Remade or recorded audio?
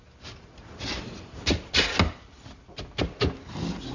recorded